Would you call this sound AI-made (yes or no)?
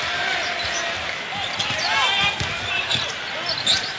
no